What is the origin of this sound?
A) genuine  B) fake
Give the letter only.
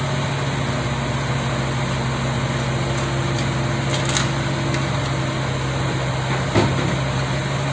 A